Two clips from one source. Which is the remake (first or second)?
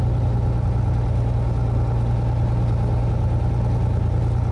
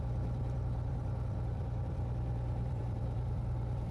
second